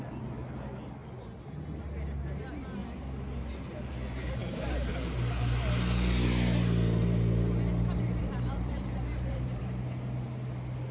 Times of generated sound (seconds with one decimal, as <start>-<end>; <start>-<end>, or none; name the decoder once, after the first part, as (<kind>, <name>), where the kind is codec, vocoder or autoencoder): 8.2-9.6 (vocoder, BigVGAN v2)